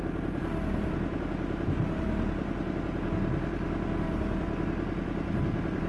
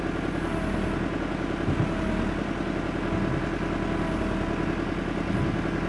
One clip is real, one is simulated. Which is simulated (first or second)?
first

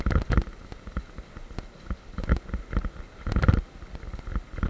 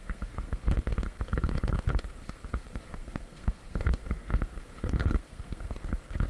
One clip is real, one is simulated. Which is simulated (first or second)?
second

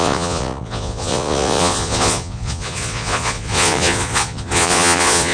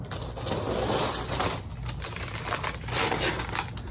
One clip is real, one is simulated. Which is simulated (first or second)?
first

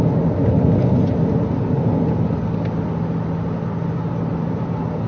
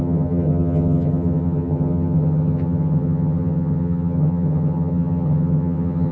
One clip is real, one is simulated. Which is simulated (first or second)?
second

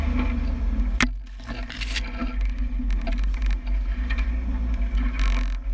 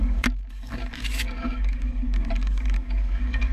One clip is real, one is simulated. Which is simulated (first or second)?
second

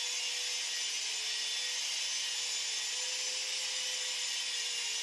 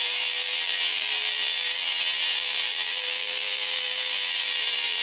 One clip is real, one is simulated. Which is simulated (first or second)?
second